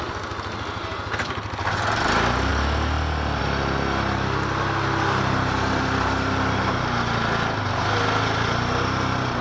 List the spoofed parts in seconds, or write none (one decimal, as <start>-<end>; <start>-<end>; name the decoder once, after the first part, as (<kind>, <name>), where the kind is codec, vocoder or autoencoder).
none